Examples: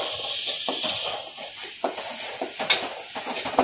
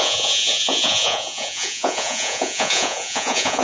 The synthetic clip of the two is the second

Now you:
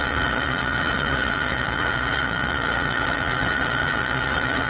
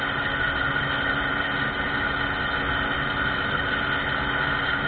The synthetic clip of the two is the first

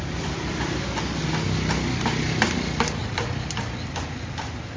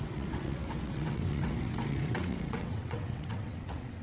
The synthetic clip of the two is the second